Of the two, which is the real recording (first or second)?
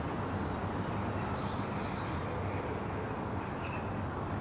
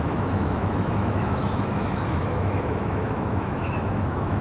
first